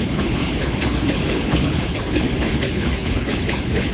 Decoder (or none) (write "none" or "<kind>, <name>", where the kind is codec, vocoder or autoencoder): codec, HILCodec